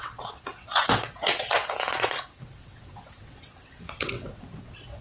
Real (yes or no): no